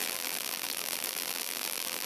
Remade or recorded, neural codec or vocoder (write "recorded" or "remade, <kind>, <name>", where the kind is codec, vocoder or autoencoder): remade, vocoder, BigVGAN v2